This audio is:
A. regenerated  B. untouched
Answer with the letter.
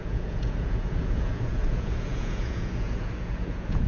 A